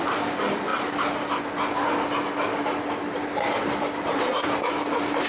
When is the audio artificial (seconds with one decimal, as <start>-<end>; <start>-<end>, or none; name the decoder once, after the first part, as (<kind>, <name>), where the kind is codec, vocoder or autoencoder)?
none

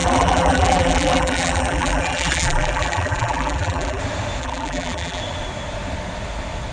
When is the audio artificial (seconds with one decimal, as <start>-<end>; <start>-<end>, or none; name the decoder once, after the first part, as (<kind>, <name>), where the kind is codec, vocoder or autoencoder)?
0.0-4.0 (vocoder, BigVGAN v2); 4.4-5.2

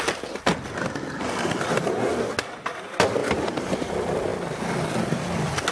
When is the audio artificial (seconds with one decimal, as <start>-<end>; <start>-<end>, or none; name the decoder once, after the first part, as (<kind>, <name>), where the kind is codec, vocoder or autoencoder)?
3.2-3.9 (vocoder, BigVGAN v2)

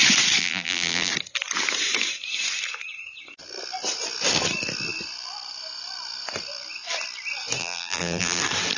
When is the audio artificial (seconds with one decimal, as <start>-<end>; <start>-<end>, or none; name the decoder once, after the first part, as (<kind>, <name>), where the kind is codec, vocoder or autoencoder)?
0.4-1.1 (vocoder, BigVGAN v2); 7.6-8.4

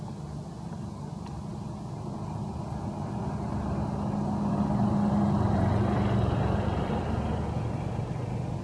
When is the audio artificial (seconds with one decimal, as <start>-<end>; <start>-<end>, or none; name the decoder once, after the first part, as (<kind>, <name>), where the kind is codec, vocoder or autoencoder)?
none

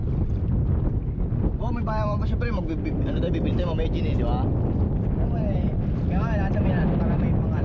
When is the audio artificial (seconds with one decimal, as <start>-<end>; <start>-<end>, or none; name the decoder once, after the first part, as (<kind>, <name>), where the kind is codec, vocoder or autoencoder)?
none

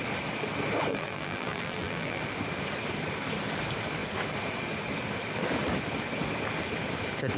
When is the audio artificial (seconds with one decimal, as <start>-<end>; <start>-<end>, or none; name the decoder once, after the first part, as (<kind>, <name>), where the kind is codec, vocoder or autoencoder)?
0.9-2.2 (vocoder, BigVGAN v2)

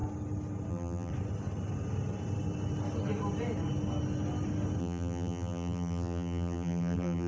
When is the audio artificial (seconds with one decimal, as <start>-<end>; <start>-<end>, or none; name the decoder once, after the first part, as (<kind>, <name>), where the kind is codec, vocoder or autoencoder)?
0.7-1.1 (vocoder, BigVGAN v2); 4.8-7.3